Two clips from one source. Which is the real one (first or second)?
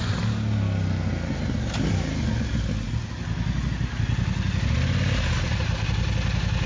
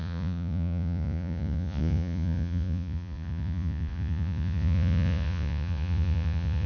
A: first